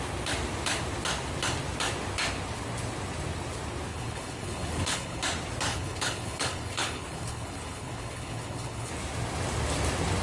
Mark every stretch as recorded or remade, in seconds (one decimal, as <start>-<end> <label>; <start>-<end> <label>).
0.0-3.9 recorded; 3.9-5.2 remade; 5.2-5.7 recorded; 5.7-8.9 remade; 8.9-10.2 recorded